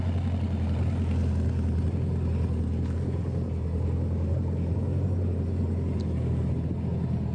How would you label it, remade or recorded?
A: recorded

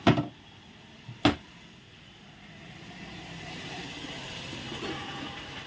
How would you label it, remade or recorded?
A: recorded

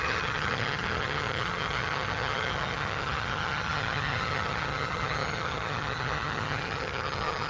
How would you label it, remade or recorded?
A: remade